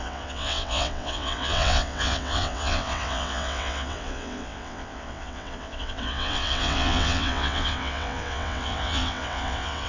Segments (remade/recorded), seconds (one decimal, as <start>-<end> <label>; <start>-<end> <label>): 0.0-9.9 remade